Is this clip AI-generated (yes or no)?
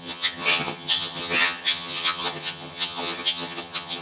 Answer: yes